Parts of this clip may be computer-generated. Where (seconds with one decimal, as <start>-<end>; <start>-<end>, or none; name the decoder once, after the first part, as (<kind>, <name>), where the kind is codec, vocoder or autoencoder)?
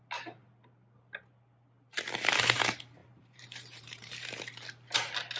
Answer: 3.0-4.4 (vocoder, BigVGAN v2)